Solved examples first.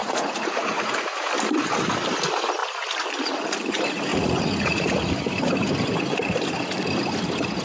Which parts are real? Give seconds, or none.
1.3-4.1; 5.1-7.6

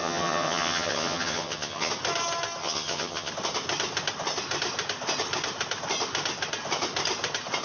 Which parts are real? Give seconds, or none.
1.9-2.6; 3.3-7.6